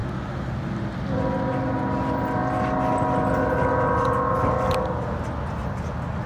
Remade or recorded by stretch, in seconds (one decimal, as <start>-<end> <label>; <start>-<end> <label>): 0.0-6.3 recorded